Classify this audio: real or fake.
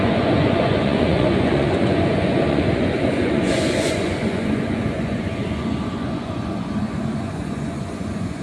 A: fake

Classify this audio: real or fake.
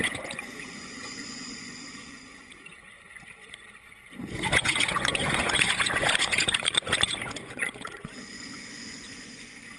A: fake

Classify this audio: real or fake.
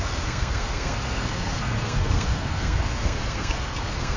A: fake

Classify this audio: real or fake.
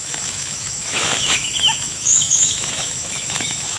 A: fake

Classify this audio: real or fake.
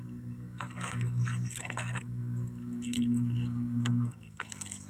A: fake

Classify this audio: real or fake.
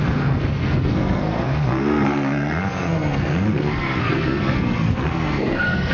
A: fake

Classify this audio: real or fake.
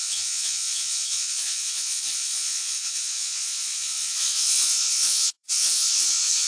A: fake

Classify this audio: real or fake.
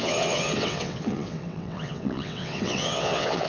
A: fake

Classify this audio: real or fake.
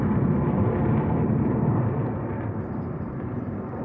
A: fake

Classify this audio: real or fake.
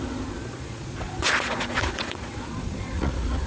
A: fake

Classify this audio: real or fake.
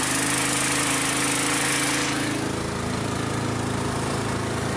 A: real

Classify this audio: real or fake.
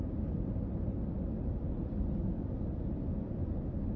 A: real